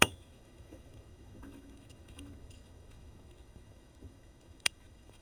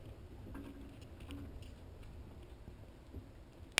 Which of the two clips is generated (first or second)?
first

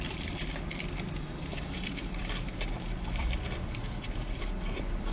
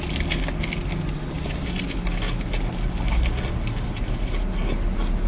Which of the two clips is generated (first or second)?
first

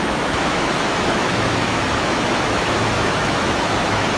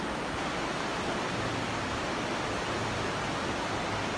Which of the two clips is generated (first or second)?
first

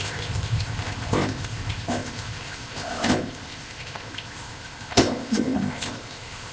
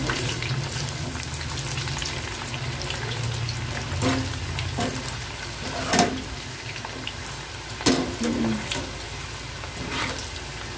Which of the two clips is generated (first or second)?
first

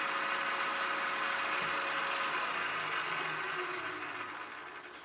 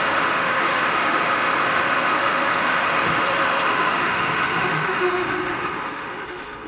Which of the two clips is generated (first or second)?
second